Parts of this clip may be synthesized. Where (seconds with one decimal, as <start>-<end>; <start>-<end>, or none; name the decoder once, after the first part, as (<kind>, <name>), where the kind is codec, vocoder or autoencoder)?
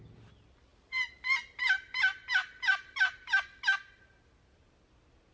1.6-3.3 (vocoder, BigVGAN v2)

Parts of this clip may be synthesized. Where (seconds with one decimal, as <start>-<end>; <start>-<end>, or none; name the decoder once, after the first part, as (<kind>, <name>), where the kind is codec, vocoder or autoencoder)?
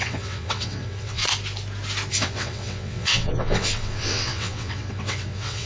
0.0-1.2 (vocoder, WaveNeXt); 2.1-5.7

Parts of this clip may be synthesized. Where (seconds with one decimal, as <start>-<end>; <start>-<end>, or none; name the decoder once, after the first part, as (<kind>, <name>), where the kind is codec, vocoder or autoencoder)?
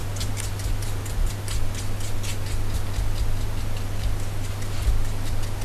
0.0-1.3 (vocoder, BigVGAN v2)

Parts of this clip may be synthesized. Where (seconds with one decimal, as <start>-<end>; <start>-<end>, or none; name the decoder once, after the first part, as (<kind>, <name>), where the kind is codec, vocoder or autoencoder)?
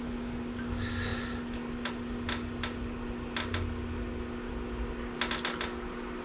none